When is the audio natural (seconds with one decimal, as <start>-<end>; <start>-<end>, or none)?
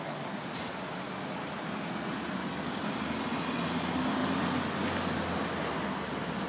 0.0-6.5